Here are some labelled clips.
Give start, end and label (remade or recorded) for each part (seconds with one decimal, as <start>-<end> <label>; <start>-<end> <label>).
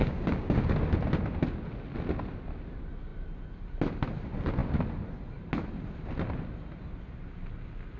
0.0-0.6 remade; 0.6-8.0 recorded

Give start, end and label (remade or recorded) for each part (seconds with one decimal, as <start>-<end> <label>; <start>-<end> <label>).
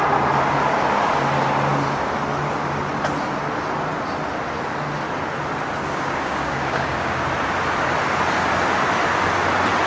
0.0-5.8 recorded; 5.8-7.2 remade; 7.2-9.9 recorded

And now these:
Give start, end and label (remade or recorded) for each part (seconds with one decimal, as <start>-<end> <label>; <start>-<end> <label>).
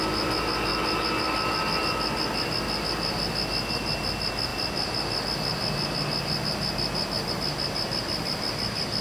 0.0-9.0 recorded